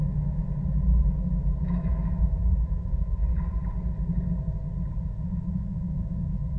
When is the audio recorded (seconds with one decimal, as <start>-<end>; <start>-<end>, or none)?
0.4-1.6; 3.2-5.0